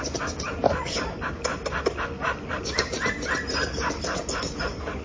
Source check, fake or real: real